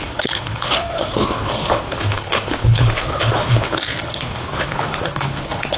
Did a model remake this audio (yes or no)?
yes